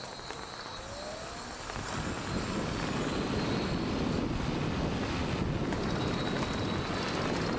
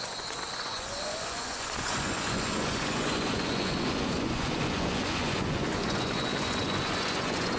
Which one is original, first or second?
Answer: first